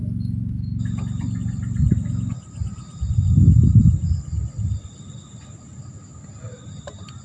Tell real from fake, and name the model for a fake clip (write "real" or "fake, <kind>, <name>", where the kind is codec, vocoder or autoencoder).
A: real